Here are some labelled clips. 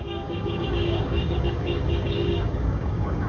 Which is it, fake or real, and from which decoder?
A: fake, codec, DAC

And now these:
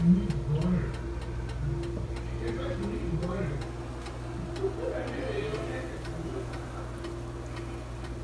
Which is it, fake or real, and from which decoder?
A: real